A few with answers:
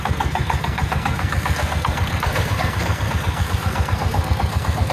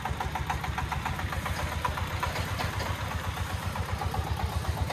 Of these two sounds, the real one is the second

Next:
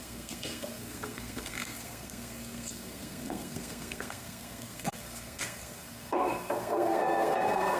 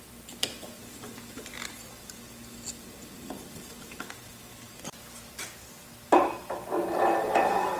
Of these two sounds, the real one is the second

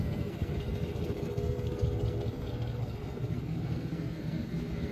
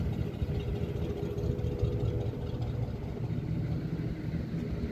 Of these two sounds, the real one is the second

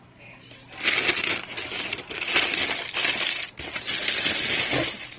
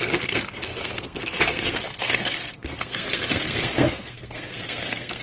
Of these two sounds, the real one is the first